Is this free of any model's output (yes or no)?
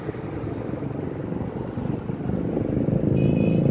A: yes